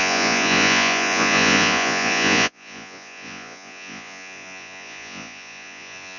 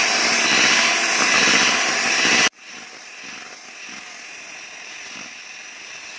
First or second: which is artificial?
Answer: first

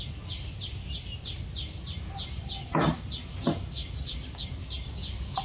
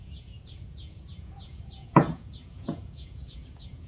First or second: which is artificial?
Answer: second